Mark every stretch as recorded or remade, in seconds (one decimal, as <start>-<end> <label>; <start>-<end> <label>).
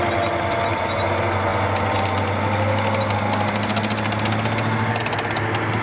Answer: 0.0-5.8 recorded